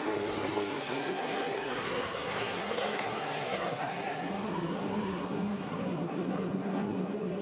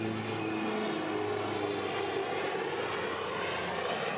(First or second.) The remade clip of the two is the first